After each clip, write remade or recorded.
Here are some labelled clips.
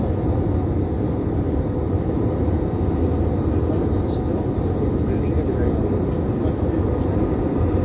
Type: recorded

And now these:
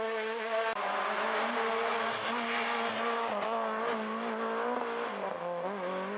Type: recorded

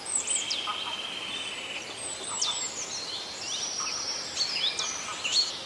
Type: recorded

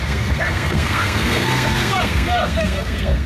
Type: remade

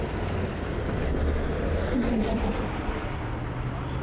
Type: recorded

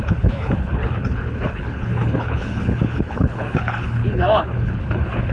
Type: remade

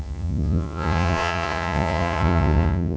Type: remade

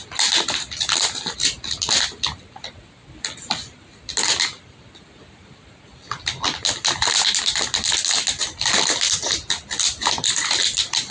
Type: recorded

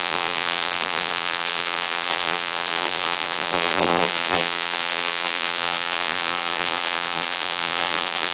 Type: remade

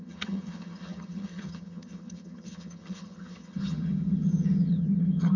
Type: remade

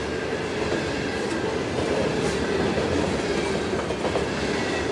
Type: recorded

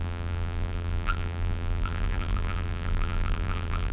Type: remade